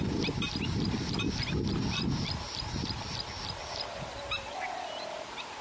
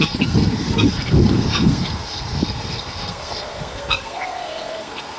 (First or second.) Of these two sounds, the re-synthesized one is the second